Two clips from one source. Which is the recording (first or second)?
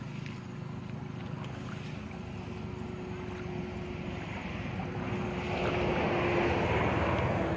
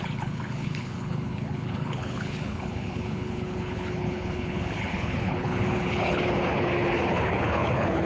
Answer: first